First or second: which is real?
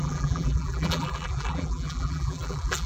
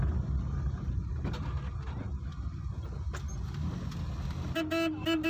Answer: second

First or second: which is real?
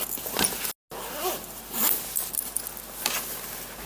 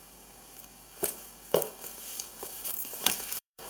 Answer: first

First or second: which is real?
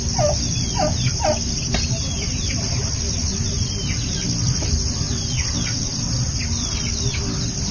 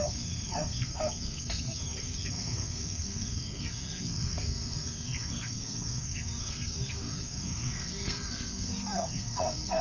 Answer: first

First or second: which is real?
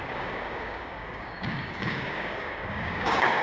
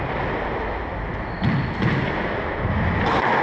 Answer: second